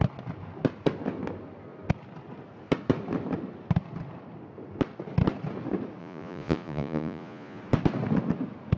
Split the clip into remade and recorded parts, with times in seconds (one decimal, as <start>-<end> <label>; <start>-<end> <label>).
0.0-6.0 recorded; 6.0-7.6 remade; 7.6-8.8 recorded

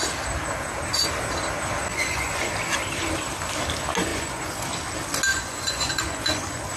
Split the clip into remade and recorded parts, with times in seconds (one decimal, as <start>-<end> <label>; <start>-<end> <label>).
0.0-1.9 recorded; 1.9-2.5 remade; 2.5-4.1 recorded; 4.1-4.6 remade; 4.6-5.3 recorded; 5.3-6.8 remade